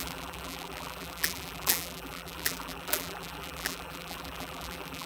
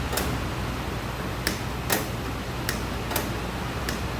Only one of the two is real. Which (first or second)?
second